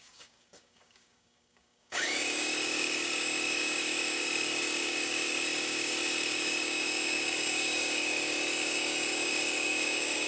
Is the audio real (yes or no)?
no